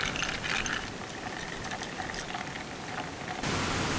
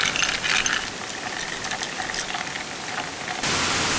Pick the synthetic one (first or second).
first